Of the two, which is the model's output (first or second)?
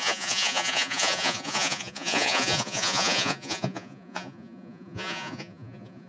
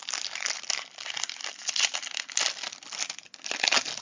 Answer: first